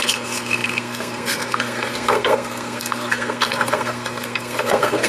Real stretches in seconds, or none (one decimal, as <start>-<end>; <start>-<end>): none